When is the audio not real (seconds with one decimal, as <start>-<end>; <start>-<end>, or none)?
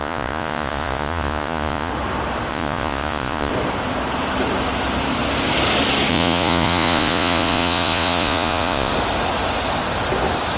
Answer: 0.0-1.9; 2.5-3.5; 6.1-8.9